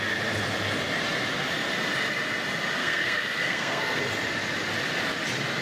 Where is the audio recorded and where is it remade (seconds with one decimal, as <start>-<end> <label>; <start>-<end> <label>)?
0.0-2.8 recorded; 2.8-4.0 remade; 4.0-5.6 recorded